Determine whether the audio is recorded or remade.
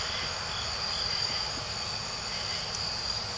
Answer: recorded